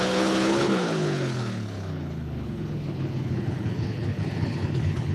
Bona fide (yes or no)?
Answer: no